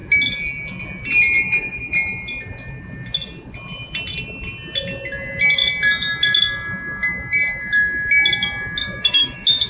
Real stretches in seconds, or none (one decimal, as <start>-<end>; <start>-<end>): 0.0-8.8

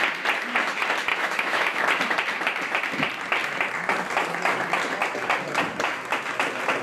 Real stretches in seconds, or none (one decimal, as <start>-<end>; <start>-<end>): 0.0-1.1; 1.8-6.8

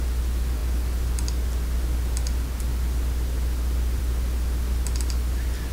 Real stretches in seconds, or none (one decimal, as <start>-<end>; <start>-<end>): 0.0-5.7